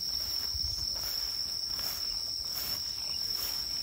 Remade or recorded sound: recorded